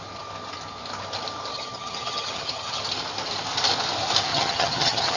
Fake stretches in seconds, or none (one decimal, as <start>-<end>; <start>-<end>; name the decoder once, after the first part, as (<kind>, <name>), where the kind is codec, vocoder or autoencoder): 1.5-2.8 (vocoder, HiFi-GAN); 4.3-5.2